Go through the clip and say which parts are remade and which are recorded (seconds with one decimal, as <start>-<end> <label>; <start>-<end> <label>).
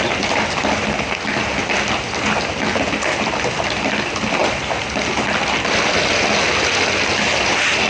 0.0-7.9 recorded